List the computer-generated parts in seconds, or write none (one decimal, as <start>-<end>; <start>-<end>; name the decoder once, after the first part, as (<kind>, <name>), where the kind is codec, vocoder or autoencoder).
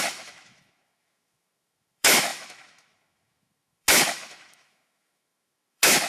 0.0-6.1 (autoencoder, DAC-VAE)